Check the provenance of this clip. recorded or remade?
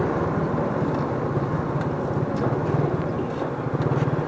recorded